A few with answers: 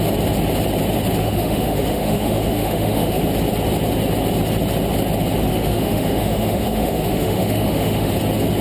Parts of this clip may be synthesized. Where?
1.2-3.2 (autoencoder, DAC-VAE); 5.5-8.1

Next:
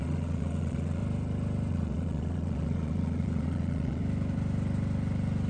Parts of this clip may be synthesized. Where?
0.0-1.0 (vocoder, Vocos); 1.7-4.0

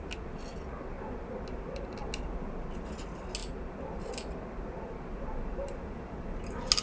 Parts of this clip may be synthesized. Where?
none

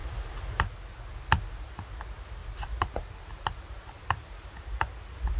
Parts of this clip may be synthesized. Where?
0.0-0.6 (vocoder, BigVGAN v2); 2.4-4.5

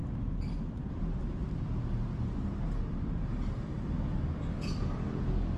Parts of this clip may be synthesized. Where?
none

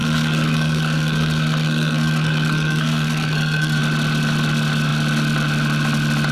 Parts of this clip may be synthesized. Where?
0.0-3.8 (codec, SNAC)

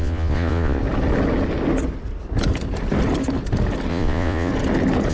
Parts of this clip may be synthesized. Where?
0.0-0.8 (vocoder, Vocos); 3.9-4.5

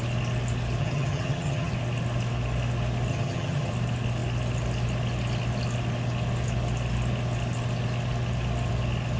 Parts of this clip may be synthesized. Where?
0.8-1.7 (vocoder, HiFi-GAN); 3.1-3.7